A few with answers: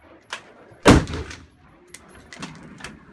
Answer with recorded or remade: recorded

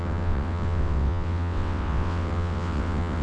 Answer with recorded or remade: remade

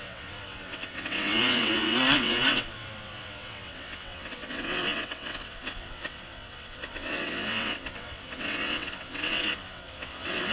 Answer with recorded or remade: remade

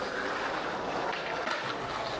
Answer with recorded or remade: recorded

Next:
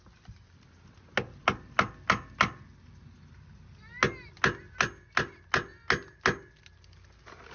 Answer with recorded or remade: recorded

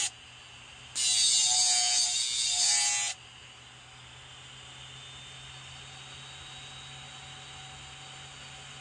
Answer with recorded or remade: recorded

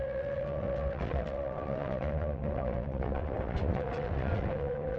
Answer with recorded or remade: remade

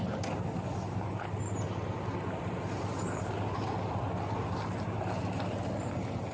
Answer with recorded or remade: recorded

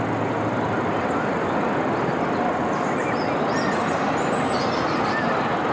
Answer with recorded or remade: recorded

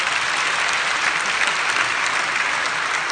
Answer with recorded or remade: recorded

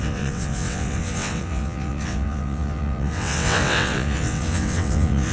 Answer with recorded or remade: remade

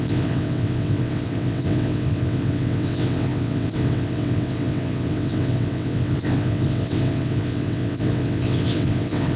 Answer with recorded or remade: remade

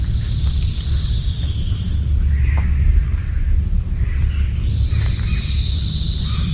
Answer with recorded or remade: recorded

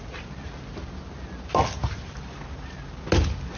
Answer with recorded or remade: recorded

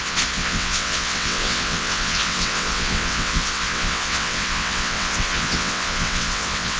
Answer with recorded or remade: remade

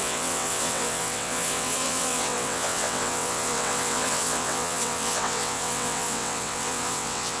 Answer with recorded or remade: remade